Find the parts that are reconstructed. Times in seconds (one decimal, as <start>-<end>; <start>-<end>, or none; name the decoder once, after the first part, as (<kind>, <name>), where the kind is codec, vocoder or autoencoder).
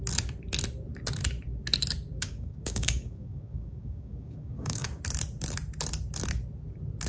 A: 2.2-5.0 (codec, DAC)